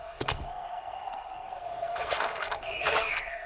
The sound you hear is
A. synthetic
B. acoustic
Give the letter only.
A